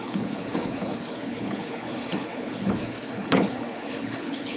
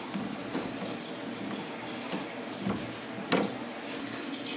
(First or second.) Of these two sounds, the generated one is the first